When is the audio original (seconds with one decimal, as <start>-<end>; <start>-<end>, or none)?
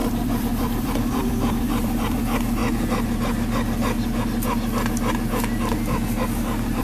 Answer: 2.6-6.8